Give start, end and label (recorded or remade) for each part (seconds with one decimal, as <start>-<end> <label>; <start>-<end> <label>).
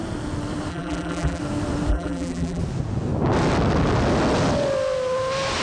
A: 0.0-0.7 recorded; 0.7-1.4 remade; 1.4-1.9 recorded; 1.9-2.6 remade; 2.6-5.6 recorded